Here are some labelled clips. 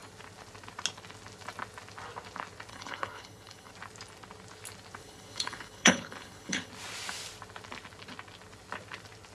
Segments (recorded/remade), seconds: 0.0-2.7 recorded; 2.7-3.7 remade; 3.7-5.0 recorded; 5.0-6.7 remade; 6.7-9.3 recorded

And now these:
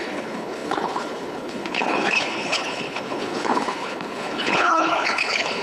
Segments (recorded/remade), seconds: 0.0-5.6 remade

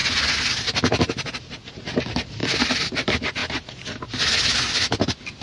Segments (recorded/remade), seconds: 0.0-5.4 recorded

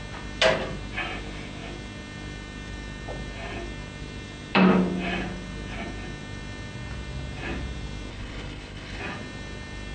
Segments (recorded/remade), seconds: 0.0-8.1 recorded; 8.1-9.0 remade; 9.0-9.9 recorded

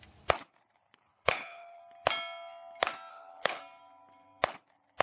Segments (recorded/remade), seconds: 0.0-1.1 recorded; 1.1-1.8 remade; 1.8-3.1 recorded; 3.1-3.6 remade; 3.6-5.0 recorded